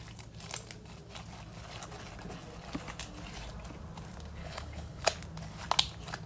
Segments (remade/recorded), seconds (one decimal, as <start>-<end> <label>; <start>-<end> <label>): 0.0-4.4 recorded; 4.4-5.0 remade; 5.0-6.3 recorded